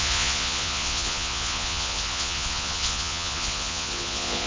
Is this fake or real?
fake